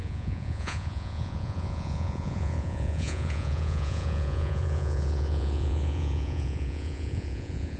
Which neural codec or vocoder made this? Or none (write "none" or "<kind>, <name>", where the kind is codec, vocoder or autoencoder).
vocoder, Vocos